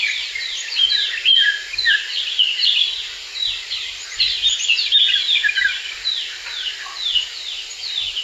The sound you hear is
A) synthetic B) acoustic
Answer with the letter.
B